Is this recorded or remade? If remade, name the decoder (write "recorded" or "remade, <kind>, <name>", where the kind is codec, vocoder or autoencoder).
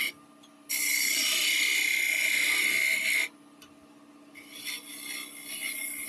recorded